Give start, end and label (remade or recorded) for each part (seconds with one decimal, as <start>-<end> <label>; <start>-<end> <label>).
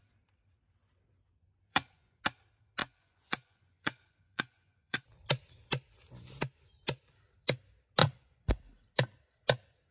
0.0-1.7 recorded; 1.7-2.2 remade; 2.2-2.8 recorded; 2.8-5.0 remade; 5.0-8.0 recorded; 8.0-8.5 remade; 8.5-9.9 recorded